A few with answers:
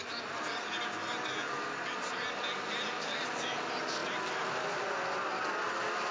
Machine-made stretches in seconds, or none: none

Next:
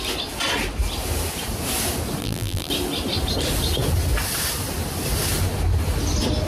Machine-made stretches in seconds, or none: 2.2-2.7

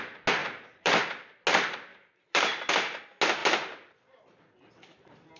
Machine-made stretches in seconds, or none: 0.4-1.0; 1.9-3.0

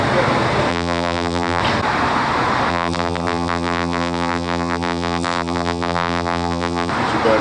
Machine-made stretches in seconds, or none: 0.7-1.6; 2.7-6.9

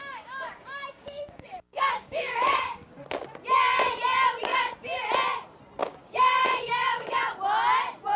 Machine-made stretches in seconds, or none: 0.0-2.9; 4.5-5.1; 5.8-7.2

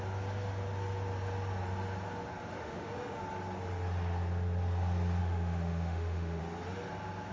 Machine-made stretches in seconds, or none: 2.6-3.2; 5.2-6.4

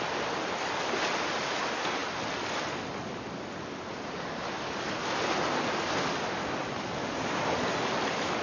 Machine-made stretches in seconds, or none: none

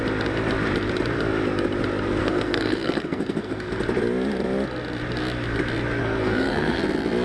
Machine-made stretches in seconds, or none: 2.2-3.8; 6.0-6.8